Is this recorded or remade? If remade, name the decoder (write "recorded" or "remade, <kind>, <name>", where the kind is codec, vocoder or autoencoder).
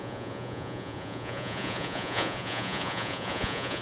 remade, vocoder, Vocos